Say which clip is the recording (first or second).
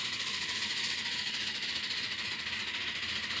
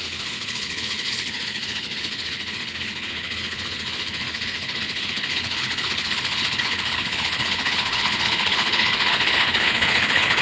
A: first